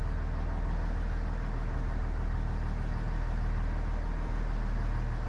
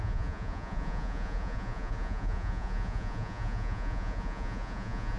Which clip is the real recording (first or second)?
first